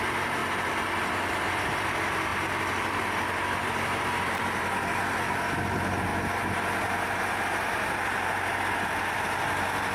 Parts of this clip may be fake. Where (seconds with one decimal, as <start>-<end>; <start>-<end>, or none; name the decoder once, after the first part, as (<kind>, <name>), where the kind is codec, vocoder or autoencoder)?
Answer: 0.4-1.3 (vocoder, BigVGAN v2); 2.3-3.6